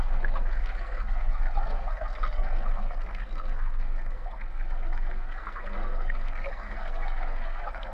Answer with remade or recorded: remade